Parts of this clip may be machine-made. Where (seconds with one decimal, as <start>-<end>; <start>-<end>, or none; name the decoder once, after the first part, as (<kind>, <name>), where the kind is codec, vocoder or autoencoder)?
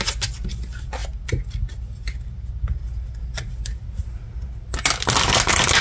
none